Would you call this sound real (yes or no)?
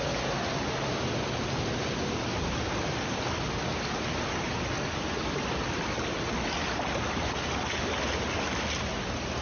yes